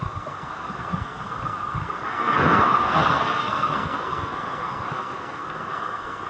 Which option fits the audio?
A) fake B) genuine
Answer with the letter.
A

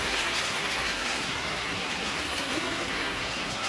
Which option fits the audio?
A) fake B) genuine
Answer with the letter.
A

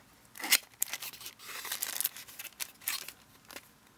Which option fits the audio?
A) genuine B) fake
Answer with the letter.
A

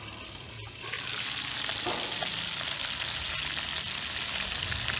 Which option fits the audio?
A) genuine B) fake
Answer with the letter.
A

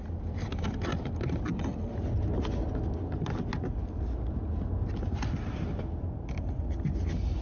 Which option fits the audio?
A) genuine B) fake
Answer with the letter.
A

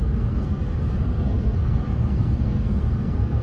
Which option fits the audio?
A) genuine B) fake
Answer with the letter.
B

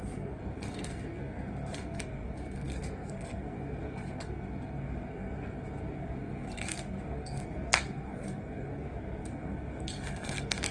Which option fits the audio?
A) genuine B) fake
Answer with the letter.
B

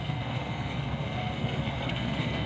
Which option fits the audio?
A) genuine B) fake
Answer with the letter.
B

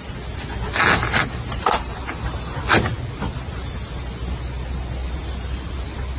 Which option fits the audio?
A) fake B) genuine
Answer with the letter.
B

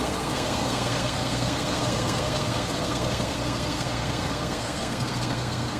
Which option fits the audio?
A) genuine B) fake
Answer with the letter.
B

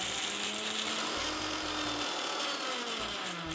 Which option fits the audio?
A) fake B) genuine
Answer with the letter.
B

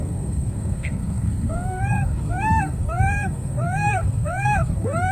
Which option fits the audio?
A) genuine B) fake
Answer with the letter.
B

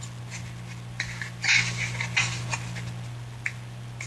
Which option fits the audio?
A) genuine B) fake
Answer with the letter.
A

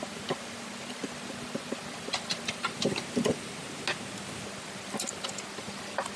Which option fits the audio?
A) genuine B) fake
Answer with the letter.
A